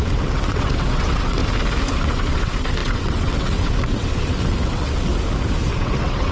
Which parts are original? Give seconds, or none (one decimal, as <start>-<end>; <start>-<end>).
1.4-2.0; 5.1-5.8